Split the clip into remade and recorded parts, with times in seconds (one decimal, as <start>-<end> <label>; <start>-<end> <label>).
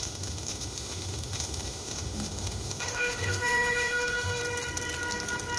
0.0-4.4 remade; 4.4-5.6 recorded